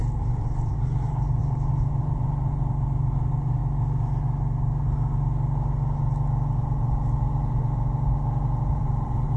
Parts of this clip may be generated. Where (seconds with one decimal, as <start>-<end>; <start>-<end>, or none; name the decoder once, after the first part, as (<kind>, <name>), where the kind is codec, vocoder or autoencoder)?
0.7-3.6 (vocoder, BigVGAN v2); 8.7-9.4